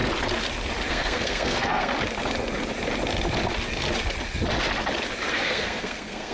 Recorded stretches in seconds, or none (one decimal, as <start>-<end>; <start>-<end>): 0.0-0.9; 1.9-5.3